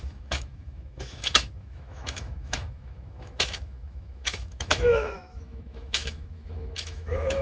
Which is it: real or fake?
fake